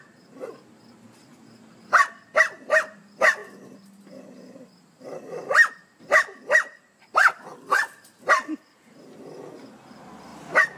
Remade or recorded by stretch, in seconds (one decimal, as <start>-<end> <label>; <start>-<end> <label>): 0.0-10.8 recorded